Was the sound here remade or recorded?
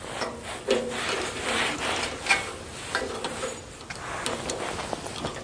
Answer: recorded